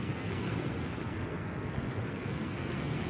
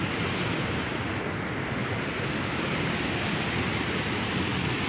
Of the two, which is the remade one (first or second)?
first